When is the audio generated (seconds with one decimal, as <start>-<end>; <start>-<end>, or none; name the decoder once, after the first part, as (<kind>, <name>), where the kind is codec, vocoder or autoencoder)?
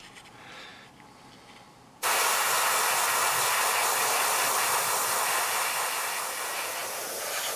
0.0-0.7 (vocoder, BigVGAN v2); 4.6-6.8